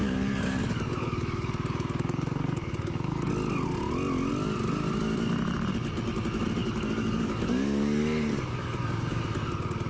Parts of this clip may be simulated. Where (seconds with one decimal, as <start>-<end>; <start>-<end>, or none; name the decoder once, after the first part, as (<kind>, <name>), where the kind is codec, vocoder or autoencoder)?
0.0-3.3 (codec, DAC); 6.6-9.2